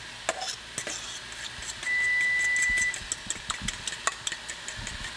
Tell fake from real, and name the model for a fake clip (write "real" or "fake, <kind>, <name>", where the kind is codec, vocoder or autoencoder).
real